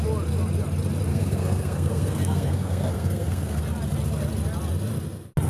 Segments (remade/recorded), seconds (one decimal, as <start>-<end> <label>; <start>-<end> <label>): 0.0-1.1 recorded; 1.1-3.6 remade; 3.6-5.5 recorded